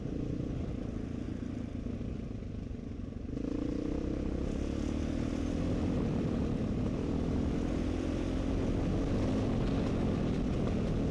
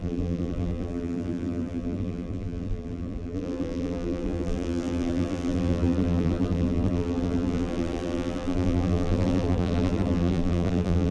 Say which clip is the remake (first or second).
second